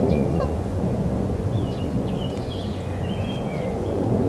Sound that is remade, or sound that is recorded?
remade